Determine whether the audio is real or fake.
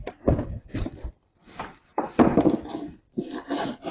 fake